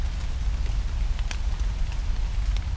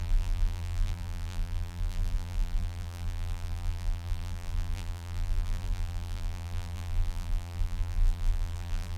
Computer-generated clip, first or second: second